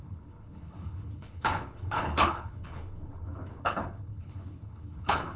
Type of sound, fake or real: fake